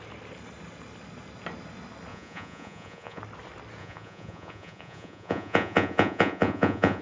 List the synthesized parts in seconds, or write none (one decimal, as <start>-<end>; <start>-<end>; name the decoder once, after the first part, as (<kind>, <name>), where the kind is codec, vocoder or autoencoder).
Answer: 2.1-3.2 (vocoder, Vocos); 3.8-7.0

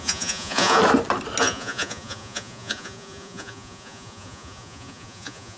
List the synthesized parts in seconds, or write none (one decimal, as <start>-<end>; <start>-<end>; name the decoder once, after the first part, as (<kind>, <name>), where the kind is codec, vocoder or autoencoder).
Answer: 0.0-0.8 (vocoder, Vocos); 1.4-5.6

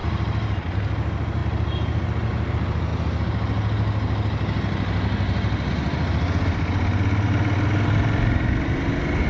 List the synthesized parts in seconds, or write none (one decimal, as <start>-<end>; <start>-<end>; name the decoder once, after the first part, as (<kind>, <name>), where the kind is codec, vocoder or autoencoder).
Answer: none